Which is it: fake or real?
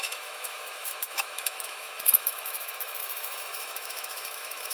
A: fake